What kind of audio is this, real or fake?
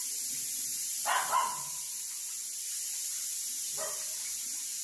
real